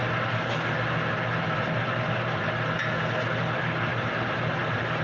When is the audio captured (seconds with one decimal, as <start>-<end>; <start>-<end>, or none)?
0.0-5.0